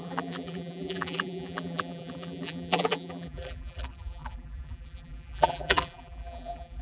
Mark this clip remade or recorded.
remade